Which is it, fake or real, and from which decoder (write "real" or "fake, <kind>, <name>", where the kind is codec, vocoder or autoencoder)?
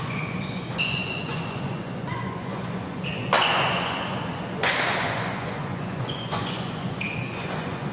fake, vocoder, Vocos